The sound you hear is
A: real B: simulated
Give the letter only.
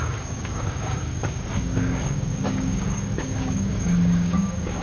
B